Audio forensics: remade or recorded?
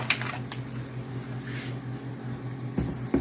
recorded